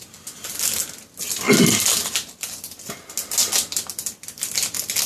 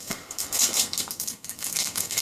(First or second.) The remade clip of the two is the second